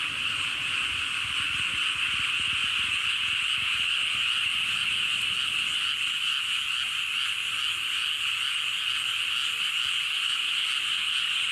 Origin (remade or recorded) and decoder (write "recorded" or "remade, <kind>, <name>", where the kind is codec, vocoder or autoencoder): recorded